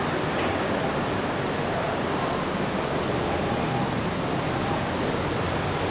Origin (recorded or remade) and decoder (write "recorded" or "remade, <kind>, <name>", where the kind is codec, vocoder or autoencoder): recorded